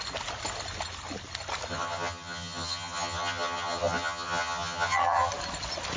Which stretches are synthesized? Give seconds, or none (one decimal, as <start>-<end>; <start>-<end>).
1.7-5.3